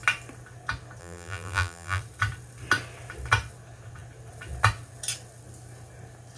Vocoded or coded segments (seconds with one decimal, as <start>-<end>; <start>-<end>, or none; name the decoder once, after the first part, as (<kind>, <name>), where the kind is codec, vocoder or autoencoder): 1.0-2.0 (vocoder, BigVGAN v2)